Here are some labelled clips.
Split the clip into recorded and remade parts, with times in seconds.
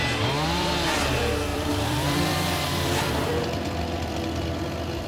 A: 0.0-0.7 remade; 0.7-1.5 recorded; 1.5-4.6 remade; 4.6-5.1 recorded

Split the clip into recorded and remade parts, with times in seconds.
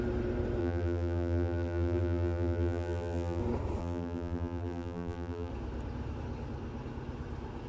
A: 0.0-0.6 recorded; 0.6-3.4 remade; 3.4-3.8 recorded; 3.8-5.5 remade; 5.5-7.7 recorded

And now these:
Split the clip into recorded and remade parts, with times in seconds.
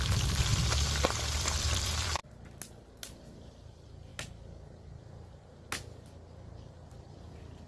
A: 0.0-0.5 remade; 0.5-1.0 recorded; 1.0-2.2 remade; 2.2-3.1 recorded; 3.1-4.1 remade; 4.1-6.9 recorded; 6.9-7.7 remade